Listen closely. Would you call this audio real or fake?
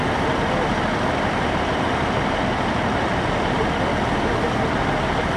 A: real